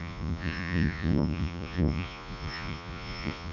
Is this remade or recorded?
remade